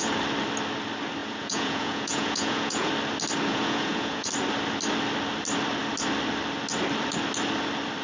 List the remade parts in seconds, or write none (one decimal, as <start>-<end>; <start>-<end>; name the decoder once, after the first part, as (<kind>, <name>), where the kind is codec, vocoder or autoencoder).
1.2-2.9 (vocoder, Vocos); 3.5-4.3